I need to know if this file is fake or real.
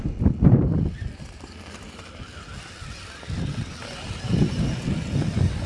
real